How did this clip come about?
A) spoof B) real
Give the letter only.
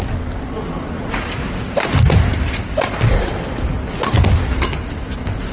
B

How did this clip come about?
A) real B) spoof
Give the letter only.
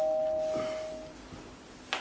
A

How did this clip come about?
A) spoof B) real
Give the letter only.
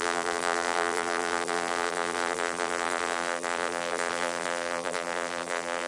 A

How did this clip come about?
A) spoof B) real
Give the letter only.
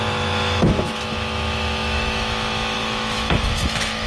A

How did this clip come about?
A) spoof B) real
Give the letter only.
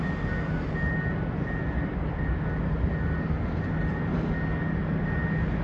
B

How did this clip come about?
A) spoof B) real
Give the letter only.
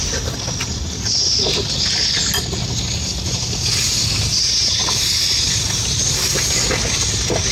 B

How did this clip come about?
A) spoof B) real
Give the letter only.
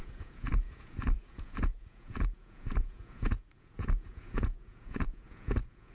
A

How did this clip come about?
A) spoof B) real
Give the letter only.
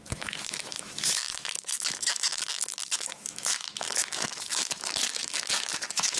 A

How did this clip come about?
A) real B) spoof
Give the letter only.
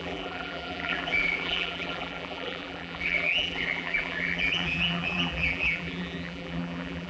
B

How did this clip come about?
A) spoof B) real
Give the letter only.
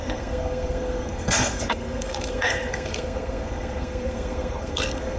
A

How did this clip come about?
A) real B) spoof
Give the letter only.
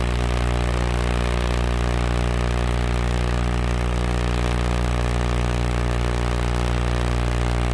A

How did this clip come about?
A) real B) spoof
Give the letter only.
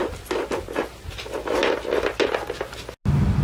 A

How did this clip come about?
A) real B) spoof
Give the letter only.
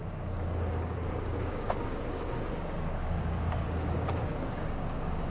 B